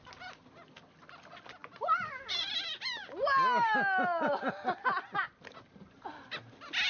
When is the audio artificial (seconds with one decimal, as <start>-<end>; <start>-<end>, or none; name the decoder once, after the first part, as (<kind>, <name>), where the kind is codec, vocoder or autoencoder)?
none

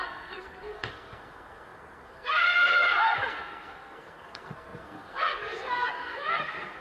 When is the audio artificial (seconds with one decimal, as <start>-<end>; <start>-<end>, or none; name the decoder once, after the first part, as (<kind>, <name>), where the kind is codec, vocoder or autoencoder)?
0.0-6.8 (codec, SNAC)

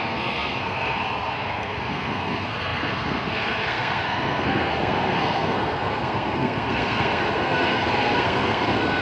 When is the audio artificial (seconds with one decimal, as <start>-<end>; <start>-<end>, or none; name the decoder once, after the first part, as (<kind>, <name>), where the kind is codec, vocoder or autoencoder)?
0.0-9.0 (codec, SNAC)